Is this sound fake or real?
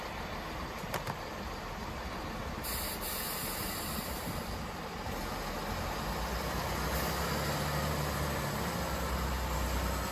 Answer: real